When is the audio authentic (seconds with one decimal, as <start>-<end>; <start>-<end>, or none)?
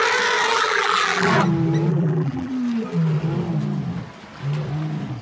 0.0-0.5; 1.3-1.9; 2.5-5.2